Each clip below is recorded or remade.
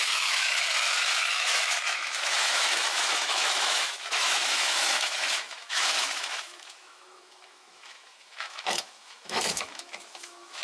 remade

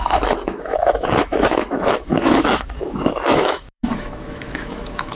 remade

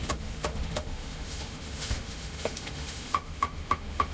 remade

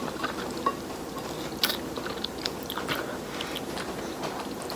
recorded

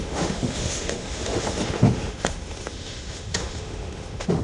remade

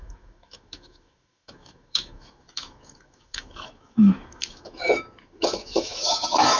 remade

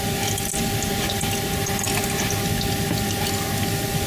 recorded